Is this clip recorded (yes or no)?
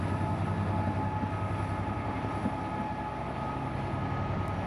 yes